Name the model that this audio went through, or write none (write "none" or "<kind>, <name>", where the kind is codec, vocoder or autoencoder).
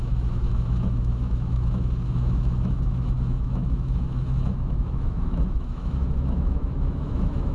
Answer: autoencoder, DAC-VAE